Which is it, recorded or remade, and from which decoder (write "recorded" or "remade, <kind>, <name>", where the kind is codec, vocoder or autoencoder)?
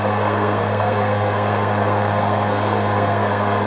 remade, codec, SNAC